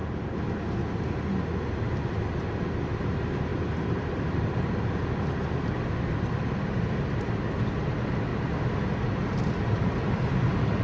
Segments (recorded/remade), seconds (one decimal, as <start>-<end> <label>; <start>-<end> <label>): 0.0-3.5 recorded; 3.5-4.7 remade; 4.7-10.8 recorded

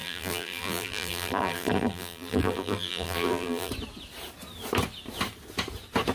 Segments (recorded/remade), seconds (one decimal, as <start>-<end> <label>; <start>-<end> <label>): 0.0-3.7 remade; 3.7-6.1 recorded